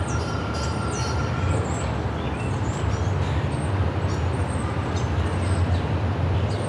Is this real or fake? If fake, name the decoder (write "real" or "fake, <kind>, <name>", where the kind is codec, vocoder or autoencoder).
real